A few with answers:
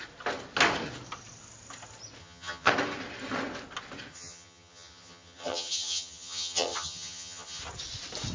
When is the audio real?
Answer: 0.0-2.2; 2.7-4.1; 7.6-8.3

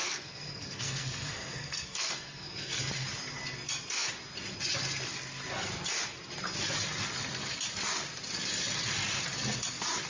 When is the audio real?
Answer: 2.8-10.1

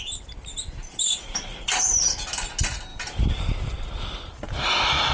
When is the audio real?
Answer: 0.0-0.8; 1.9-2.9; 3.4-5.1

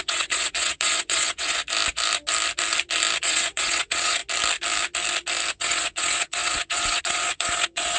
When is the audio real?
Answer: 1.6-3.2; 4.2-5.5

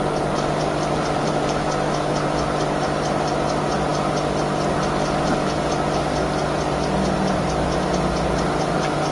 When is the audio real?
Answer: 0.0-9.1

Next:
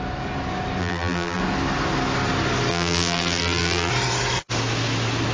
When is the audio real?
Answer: 0.0-0.8; 1.4-2.7; 3.9-5.3